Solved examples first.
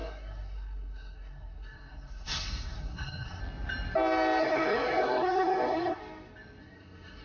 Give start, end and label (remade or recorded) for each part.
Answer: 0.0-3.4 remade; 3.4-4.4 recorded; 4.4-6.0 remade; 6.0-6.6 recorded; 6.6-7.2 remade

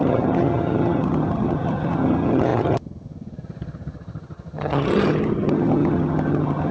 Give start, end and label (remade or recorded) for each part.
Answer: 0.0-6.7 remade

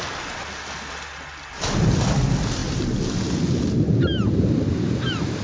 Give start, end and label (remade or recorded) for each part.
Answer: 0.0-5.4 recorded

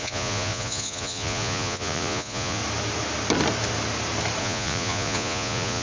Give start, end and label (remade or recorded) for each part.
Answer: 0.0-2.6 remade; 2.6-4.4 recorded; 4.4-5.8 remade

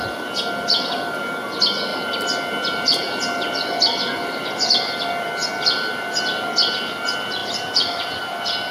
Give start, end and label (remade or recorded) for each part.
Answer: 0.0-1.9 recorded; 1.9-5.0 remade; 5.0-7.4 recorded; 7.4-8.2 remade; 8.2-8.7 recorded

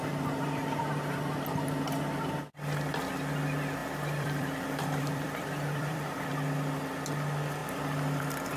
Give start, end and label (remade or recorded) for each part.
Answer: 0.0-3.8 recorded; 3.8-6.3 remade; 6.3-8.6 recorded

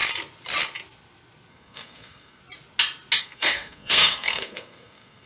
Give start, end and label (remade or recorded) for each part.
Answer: 0.0-1.5 recorded; 1.5-2.4 remade; 2.4-3.2 recorded; 3.2-5.3 remade